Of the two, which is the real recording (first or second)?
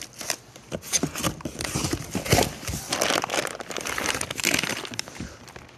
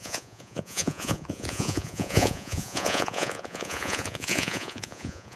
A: first